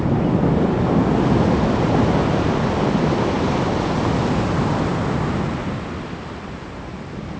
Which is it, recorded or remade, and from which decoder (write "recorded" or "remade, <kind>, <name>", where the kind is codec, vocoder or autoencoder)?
recorded